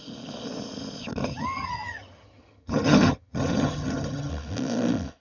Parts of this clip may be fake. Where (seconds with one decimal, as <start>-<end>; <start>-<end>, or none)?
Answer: 1.2-4.3